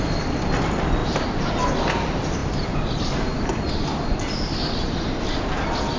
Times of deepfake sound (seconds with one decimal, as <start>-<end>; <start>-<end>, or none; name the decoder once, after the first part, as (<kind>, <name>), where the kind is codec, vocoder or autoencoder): none